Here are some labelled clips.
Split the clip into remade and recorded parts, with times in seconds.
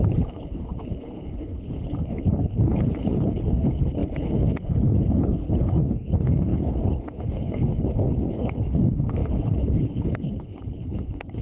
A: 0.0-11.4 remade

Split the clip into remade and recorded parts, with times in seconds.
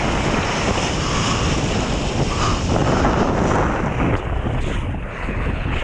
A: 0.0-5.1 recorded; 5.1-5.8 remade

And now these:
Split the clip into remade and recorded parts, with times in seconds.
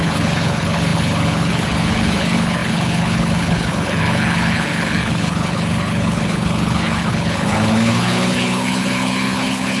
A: 0.0-9.8 remade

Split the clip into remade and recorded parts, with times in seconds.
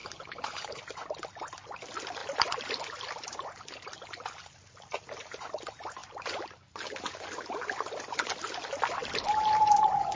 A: 0.0-0.8 remade; 0.8-10.2 recorded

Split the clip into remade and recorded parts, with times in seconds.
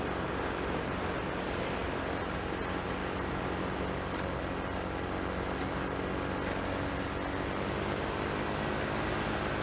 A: 0.0-9.6 recorded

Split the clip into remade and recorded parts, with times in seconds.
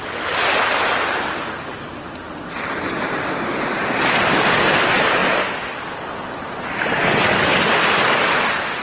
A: 0.0-8.8 recorded